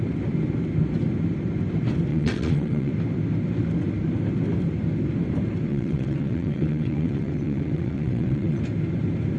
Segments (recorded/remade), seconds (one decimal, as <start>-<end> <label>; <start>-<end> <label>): 0.0-2.1 recorded; 2.1-2.9 remade; 2.9-5.7 recorded; 5.7-8.6 remade; 8.6-9.4 recorded